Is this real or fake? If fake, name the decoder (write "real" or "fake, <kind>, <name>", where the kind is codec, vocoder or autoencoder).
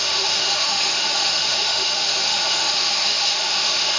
fake, autoencoder, DAC-VAE